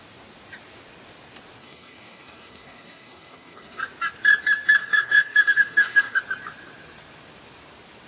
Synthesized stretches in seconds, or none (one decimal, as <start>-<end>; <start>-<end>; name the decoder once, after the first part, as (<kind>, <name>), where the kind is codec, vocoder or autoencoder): 1.6-3.8 (codec, SNAC); 4.8-6.2